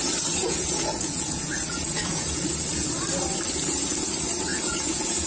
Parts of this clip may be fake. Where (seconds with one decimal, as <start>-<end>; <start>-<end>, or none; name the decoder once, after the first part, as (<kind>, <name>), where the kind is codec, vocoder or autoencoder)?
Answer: 0.4-2.4 (vocoder, Vocos); 4.5-5.3